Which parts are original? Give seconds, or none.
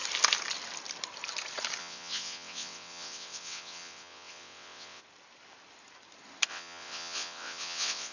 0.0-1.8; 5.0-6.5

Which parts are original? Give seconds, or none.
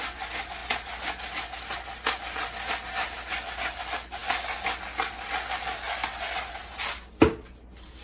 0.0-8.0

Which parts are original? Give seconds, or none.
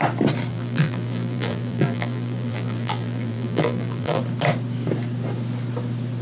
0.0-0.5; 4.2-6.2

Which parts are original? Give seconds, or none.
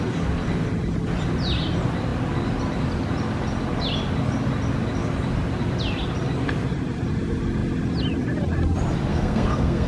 0.0-9.1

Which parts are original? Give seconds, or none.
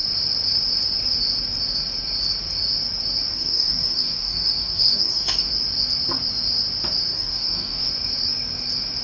0.0-3.3; 5.5-7.1; 7.9-9.0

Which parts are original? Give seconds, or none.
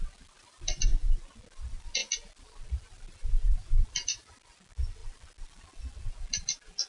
0.0-6.9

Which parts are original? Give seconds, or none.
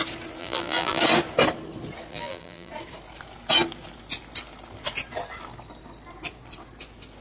0.0-0.4; 1.0-2.1; 2.7-7.2